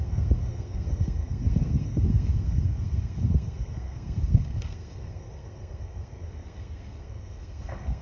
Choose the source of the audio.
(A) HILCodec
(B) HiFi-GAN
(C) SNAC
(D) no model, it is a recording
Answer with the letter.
C